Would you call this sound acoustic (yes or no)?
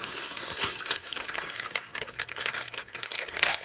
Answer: no